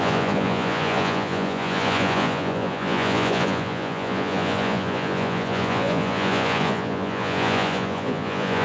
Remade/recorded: remade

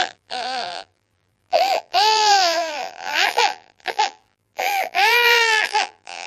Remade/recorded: remade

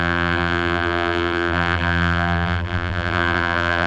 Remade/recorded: remade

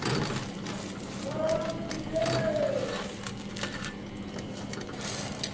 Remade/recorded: recorded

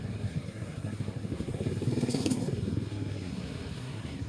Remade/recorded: remade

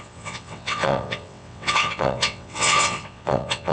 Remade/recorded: remade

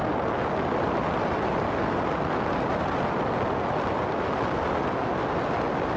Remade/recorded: recorded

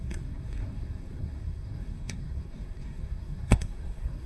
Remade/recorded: remade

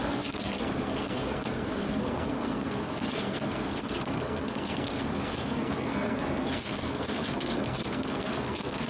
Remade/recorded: remade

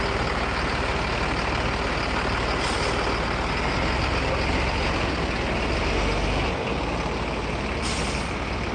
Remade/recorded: recorded